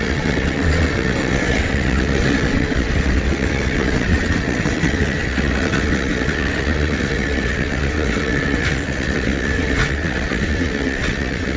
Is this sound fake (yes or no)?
yes